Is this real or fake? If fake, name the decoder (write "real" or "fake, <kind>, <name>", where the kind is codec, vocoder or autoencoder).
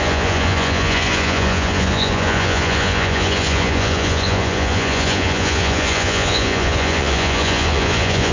fake, vocoder, Vocos